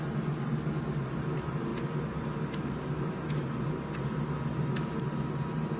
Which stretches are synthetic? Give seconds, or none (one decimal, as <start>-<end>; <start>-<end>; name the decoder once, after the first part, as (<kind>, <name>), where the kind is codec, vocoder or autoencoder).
none